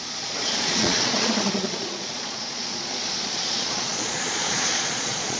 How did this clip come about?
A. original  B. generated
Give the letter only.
B